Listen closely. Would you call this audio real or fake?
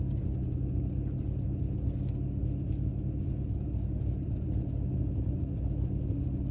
real